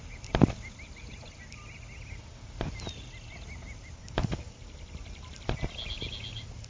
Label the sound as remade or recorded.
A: recorded